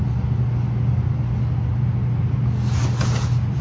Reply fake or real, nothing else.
real